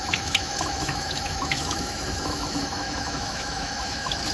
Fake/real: fake